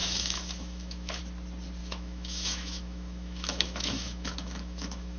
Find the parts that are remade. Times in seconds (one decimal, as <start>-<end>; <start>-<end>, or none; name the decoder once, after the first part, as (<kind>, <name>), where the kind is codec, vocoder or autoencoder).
0.0-1.2 (autoencoder, DAC-VAE); 1.8-5.2